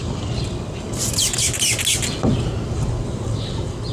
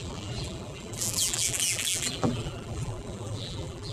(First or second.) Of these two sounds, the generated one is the second